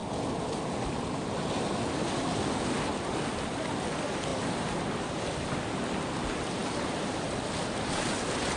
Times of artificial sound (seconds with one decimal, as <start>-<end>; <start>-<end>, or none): none